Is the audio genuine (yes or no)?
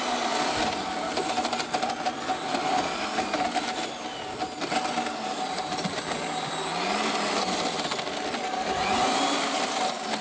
yes